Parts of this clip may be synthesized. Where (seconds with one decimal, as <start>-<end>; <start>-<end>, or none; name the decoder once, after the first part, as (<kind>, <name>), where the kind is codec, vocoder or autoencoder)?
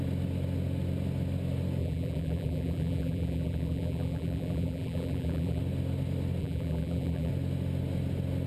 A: 1.8-5.6 (vocoder, BigVGAN v2); 6.4-7.3